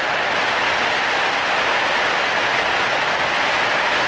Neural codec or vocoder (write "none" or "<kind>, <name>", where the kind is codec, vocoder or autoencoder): none